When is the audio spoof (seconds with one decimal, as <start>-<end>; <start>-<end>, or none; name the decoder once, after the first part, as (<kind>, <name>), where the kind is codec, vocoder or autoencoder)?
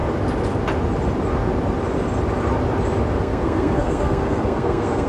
3.1-5.1 (codec, SNAC)